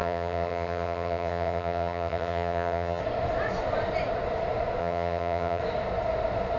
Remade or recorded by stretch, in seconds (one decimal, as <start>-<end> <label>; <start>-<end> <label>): 0.0-3.0 remade; 3.0-4.8 recorded; 4.8-5.6 remade; 5.6-6.6 recorded